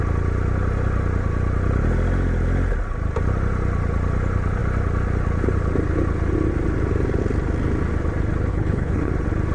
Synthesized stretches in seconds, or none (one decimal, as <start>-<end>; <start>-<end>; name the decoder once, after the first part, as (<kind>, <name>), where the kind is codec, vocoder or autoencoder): 8.5-9.1 (codec, HILCodec)